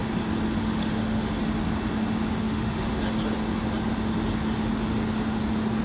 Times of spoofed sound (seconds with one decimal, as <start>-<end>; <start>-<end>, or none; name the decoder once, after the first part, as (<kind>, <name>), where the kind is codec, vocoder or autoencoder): 0.6-1.4 (autoencoder, DAC-VAE); 2.3-3.0